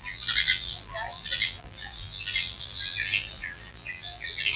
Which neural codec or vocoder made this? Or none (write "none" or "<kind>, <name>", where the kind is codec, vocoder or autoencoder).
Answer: vocoder, BigVGAN v2